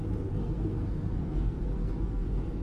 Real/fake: fake